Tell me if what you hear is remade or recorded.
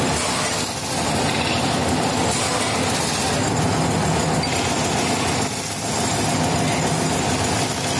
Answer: recorded